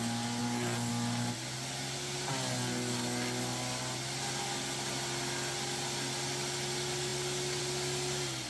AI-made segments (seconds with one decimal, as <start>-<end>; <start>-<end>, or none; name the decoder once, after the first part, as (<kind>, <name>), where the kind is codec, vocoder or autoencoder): none